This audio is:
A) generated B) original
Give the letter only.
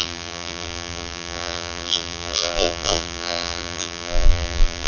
A